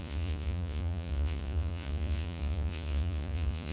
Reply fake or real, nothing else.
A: fake